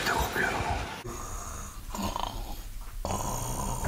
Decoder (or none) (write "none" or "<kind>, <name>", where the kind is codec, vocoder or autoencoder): none